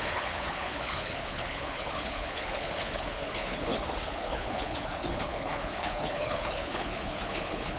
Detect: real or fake fake